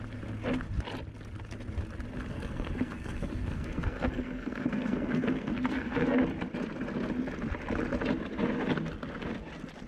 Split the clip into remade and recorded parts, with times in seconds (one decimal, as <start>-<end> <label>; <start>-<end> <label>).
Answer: 0.0-2.3 recorded; 2.3-6.2 remade; 6.2-9.9 recorded